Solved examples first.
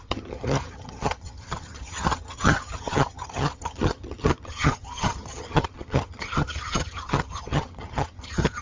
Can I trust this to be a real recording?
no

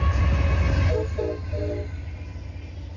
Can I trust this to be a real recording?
yes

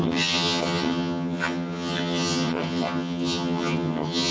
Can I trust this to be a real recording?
no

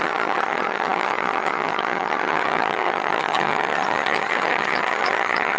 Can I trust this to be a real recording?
no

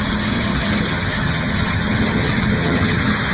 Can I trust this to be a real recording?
no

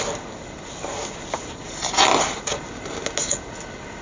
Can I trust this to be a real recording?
yes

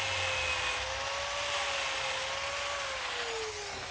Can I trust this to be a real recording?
yes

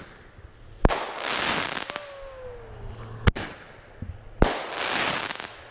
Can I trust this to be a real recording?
yes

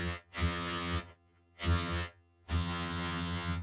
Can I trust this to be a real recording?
no